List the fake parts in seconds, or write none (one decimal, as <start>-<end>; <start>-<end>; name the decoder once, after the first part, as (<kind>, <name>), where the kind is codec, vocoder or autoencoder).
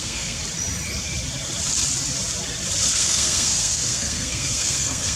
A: 0.0-0.4 (codec, SNAC); 2.9-5.2